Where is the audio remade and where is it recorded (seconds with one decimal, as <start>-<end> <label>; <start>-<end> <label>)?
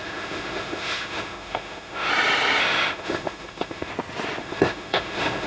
0.0-2.1 remade; 2.1-2.6 recorded; 2.6-3.9 remade; 3.9-4.4 recorded; 4.4-5.5 remade